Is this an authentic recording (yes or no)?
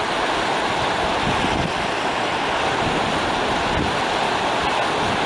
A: yes